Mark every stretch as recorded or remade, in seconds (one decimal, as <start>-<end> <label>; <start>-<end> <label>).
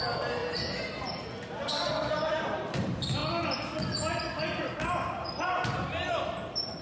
0.0-0.4 remade; 0.4-2.3 recorded; 2.3-3.2 remade; 3.2-4.6 recorded; 4.6-6.8 remade